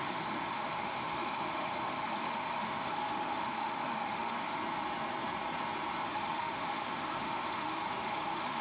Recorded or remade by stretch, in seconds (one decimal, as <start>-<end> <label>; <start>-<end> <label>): 0.0-4.6 remade; 4.6-6.0 recorded; 6.0-8.6 remade